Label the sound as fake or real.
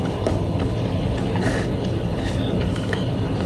fake